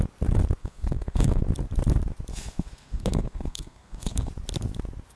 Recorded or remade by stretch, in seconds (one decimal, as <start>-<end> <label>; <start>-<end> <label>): 0.0-0.6 recorded; 0.6-1.4 remade; 1.4-2.3 recorded; 2.3-4.3 remade; 4.3-5.2 recorded